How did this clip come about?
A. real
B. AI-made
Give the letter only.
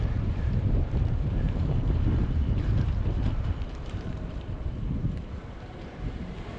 B